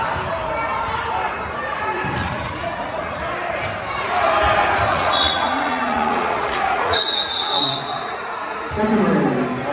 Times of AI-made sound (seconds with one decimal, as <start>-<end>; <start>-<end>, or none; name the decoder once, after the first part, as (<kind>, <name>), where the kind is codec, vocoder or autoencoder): 2.2-3.2 (vocoder, Vocos); 4.9-8.7